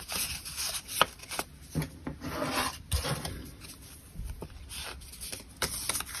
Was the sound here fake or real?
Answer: real